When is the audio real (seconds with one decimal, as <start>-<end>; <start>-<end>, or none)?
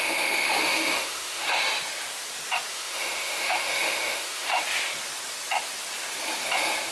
1.5-2.7; 4.5-6.9